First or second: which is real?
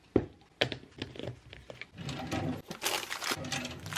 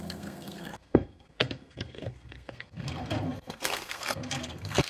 first